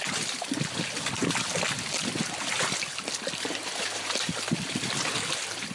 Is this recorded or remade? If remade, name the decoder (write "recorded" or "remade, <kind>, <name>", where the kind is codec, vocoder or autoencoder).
recorded